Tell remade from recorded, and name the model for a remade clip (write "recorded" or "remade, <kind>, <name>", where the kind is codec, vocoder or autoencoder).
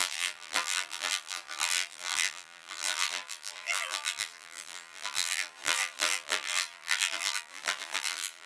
remade, vocoder, BigVGAN v2